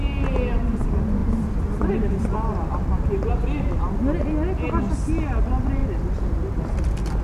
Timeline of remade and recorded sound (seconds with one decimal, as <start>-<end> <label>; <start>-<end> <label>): 0.0-1.2 recorded; 1.2-1.9 remade; 1.9-5.8 recorded; 5.8-7.2 remade